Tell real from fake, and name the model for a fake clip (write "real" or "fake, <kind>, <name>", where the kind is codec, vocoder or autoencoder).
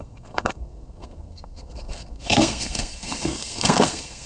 fake, codec, SNAC